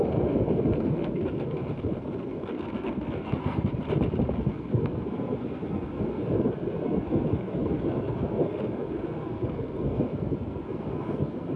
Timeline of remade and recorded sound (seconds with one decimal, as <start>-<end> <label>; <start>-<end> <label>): 0.0-3.7 remade; 3.7-4.3 recorded; 4.3-11.6 remade